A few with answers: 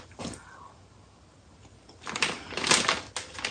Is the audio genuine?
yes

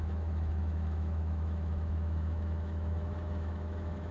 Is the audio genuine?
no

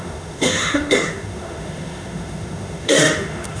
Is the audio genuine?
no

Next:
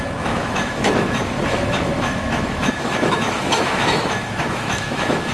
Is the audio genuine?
no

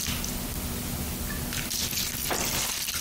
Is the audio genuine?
yes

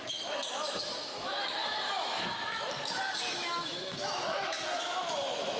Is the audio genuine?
no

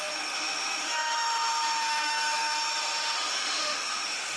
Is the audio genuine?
no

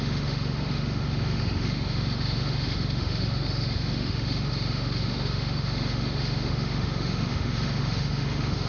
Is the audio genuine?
no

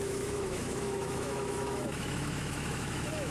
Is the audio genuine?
no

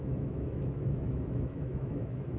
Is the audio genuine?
no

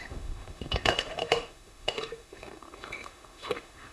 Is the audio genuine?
no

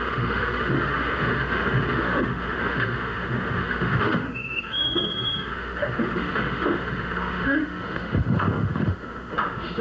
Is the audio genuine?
no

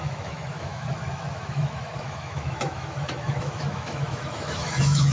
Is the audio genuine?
no